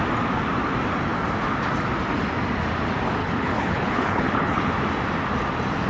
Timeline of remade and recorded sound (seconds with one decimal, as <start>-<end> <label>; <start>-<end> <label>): 0.0-3.2 recorded; 3.2-4.7 remade; 4.7-5.9 recorded